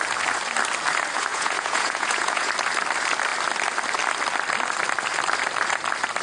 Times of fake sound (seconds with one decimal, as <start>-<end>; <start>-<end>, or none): 1.3-2.5